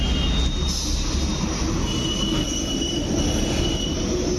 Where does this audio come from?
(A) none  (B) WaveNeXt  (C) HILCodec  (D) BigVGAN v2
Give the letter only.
A